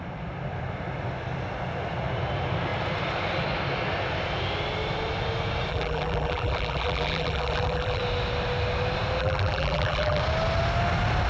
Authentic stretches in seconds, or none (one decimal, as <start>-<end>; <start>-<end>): 0.0-5.7; 8.0-9.2; 10.2-11.3